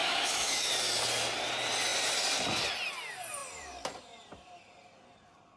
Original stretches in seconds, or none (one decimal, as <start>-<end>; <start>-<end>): 0.7-5.6